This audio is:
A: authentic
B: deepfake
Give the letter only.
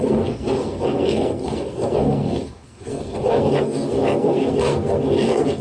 B